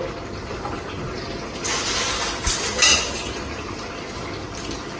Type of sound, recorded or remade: recorded